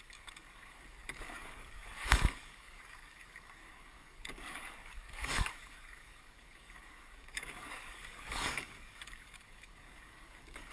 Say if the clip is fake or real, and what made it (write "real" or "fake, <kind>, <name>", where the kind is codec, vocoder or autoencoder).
fake, codec, DAC